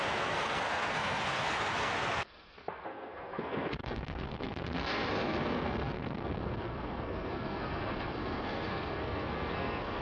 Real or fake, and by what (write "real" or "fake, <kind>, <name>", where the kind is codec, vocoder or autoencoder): fake, codec, SNAC